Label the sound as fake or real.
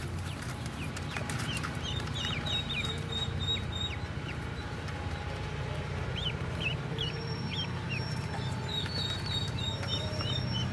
fake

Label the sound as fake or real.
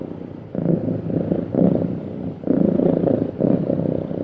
real